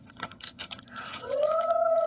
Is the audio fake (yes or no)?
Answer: yes